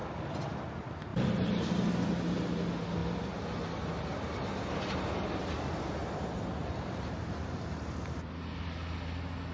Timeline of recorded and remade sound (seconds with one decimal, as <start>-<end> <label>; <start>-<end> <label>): 0.0-1.1 recorded; 1.1-1.7 remade; 1.7-6.0 recorded; 6.0-8.0 remade; 8.0-9.5 recorded